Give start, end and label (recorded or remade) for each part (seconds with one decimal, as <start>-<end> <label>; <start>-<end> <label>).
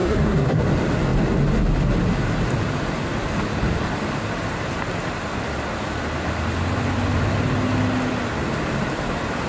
0.0-0.6 remade; 0.6-9.5 recorded